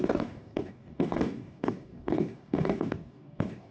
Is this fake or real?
fake